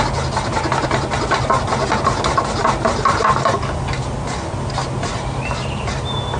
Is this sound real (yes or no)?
yes